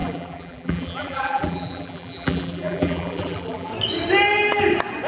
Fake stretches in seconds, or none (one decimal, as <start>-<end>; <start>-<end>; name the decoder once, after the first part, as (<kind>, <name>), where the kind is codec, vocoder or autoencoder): 0.0-3.7 (vocoder, BigVGAN v2)

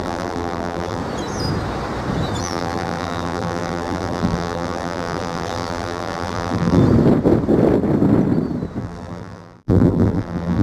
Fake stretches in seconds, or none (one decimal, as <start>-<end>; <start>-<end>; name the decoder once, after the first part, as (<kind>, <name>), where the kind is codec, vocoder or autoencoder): 0.0-1.0 (vocoder, BigVGAN v2); 2.4-6.8; 8.8-10.6

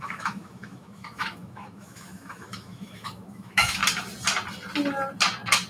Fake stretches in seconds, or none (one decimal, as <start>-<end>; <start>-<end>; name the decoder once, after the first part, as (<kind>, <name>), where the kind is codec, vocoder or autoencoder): 0.0-3.8 (autoencoder, DAC-VAE)

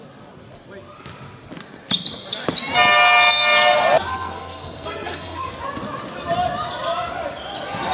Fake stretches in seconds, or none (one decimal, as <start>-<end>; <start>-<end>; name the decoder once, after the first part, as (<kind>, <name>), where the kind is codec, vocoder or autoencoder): 4.1-5.5 (codec, SNAC)

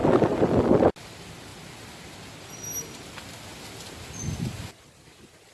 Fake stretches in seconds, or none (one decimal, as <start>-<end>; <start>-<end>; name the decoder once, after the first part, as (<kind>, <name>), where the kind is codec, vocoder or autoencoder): none

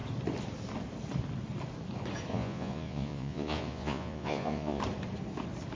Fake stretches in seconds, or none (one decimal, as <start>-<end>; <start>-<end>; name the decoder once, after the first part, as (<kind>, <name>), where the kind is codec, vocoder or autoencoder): 2.3-4.8 (vocoder, Vocos)

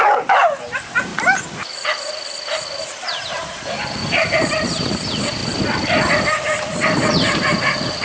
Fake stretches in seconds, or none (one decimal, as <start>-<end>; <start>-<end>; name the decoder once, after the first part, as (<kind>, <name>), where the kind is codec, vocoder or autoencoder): 0.0-1.1 (vocoder, BigVGAN v2); 3.2-5.4; 6.2-8.0